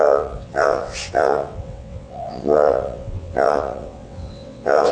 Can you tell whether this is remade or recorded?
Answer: remade